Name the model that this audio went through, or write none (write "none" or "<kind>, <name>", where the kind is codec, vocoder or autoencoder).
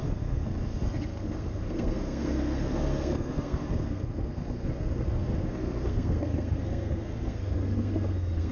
codec, SNAC